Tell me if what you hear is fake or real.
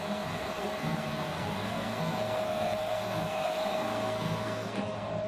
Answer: fake